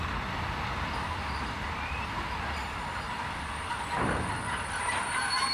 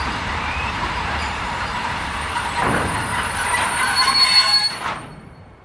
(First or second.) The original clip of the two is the first